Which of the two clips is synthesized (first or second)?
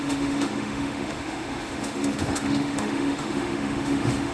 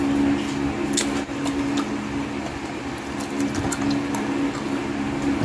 first